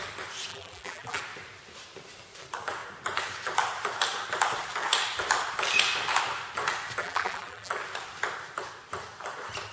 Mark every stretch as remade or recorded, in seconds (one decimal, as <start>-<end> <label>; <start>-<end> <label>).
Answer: 0.0-0.5 recorded; 0.5-1.2 remade; 1.2-7.0 recorded; 7.0-7.7 remade; 7.7-9.7 recorded